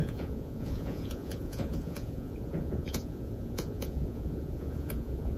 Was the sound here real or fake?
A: fake